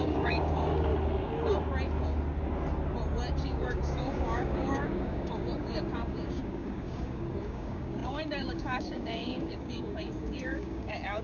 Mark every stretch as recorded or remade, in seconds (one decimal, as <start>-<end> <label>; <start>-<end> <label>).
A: 0.0-0.9 remade; 0.9-3.4 recorded; 3.4-11.2 remade